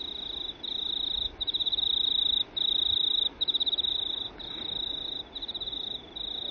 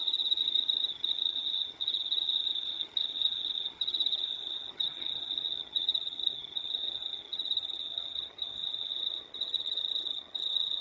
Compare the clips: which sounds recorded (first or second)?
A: first